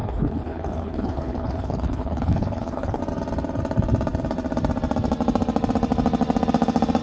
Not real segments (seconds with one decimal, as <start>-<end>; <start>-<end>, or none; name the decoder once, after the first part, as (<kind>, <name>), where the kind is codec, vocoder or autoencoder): 0.0-3.0 (codec, HILCodec)